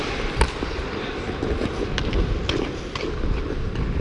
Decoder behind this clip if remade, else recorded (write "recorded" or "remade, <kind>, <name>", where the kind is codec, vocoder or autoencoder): recorded